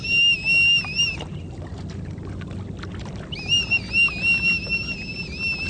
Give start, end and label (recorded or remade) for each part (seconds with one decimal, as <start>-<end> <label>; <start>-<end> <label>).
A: 0.0-5.7 recorded